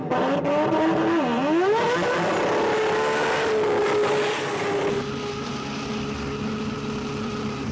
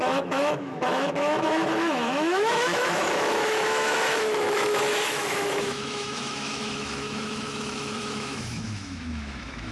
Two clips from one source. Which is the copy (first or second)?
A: second